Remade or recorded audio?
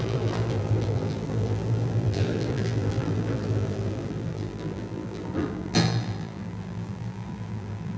remade